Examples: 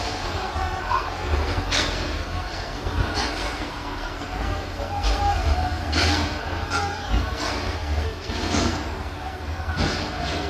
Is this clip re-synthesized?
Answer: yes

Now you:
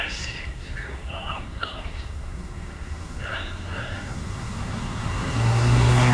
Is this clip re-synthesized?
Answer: yes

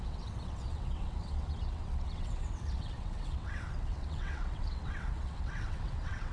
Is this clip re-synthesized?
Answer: yes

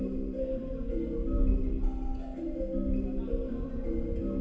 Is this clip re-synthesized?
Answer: no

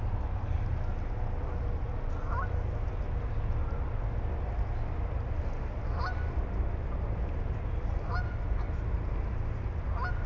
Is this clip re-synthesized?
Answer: no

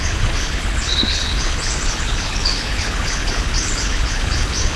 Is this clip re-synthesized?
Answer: yes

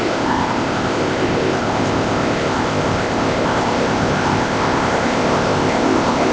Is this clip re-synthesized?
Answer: yes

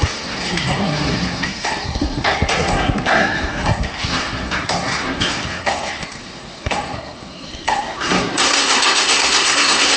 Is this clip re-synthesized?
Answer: yes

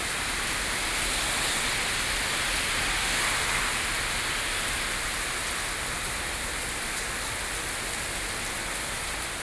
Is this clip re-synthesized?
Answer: no